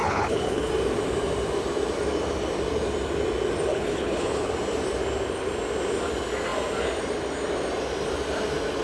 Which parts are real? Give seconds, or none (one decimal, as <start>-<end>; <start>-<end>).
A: 0.7-3.7; 4.5-8.8